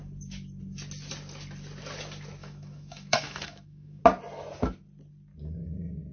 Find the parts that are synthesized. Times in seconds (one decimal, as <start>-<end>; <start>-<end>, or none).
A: 2.4-4.0